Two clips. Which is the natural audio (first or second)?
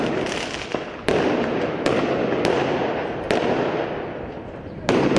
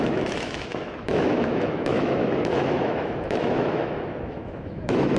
first